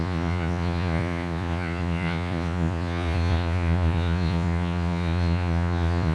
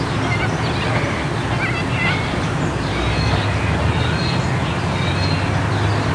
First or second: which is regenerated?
first